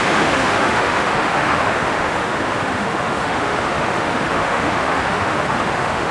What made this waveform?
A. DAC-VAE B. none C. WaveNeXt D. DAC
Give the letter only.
A